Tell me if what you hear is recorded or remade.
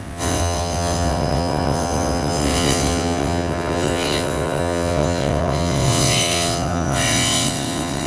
remade